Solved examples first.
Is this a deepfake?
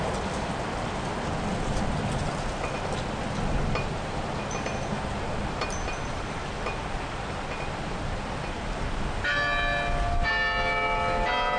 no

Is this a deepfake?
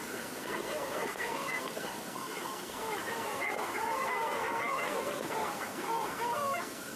yes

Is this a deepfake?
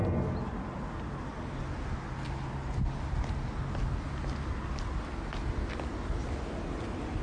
no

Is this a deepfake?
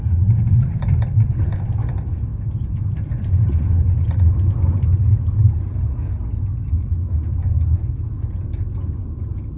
no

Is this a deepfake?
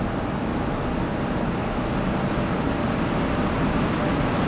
no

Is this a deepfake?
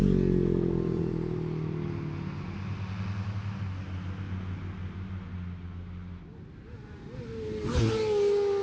no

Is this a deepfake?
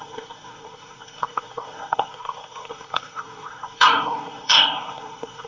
yes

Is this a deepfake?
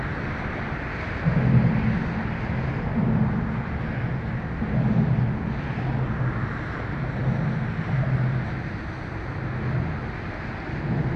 no